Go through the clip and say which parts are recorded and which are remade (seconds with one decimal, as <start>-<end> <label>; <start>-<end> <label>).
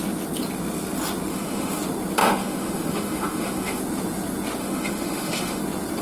0.0-1.3 recorded; 1.3-1.8 remade; 1.8-2.2 recorded; 2.2-3.8 remade; 3.8-4.6 recorded; 4.6-5.6 remade; 5.6-6.0 recorded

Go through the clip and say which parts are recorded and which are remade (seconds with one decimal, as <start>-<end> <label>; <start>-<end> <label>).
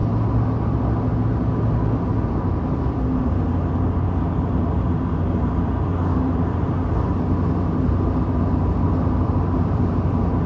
0.0-10.5 recorded